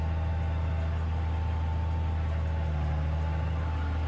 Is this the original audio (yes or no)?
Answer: yes